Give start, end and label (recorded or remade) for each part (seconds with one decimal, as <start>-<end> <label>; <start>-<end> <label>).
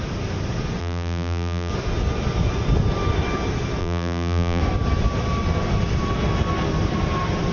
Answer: 0.0-0.8 recorded; 0.8-1.7 remade; 1.7-3.8 recorded; 3.8-4.6 remade; 4.6-7.5 recorded